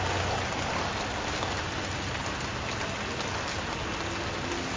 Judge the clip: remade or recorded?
recorded